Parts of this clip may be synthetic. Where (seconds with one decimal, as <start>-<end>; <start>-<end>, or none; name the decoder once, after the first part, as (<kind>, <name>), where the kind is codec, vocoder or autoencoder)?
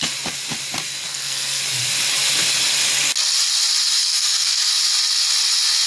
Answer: 0.9-1.6 (codec, SNAC); 4.0-4.7